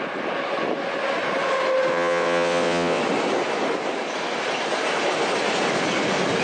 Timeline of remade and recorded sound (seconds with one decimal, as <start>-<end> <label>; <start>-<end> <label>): 0.0-1.9 recorded; 1.9-3.0 remade; 3.0-6.4 recorded